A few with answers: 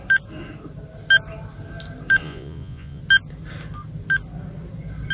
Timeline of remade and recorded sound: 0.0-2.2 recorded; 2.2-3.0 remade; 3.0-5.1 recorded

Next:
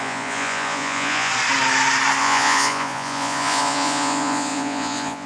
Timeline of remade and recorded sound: 0.0-1.3 remade; 1.3-2.2 recorded; 2.2-5.3 remade

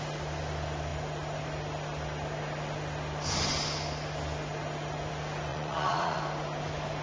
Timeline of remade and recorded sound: 0.0-5.5 recorded; 5.5-6.2 remade; 6.2-7.0 recorded

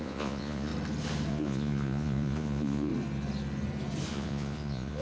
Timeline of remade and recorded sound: 0.0-0.7 remade; 0.7-1.3 recorded; 1.3-2.9 remade; 2.9-4.1 recorded; 4.1-5.0 remade

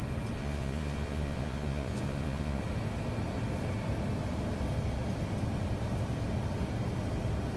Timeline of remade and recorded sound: 0.0-0.4 recorded; 0.4-2.6 remade; 2.6-7.6 recorded

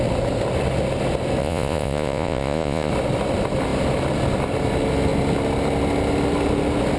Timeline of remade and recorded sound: 0.0-1.4 recorded; 1.4-2.9 remade; 2.9-7.0 recorded